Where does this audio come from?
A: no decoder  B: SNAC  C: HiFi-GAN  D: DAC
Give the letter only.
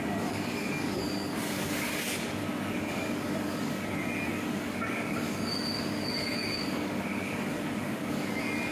D